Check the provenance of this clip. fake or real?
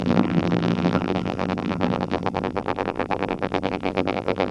fake